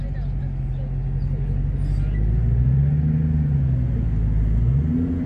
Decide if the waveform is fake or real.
real